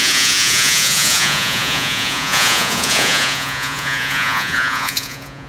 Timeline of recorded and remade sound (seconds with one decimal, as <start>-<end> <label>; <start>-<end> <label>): 0.0-5.5 remade